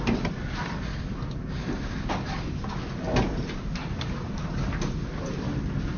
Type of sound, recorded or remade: recorded